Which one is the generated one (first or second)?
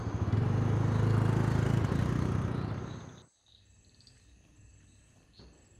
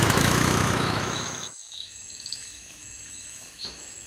second